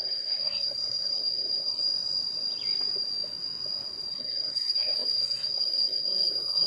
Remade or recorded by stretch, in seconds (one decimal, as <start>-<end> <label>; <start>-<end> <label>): 0.0-1.8 remade; 1.8-4.1 recorded; 4.1-6.7 remade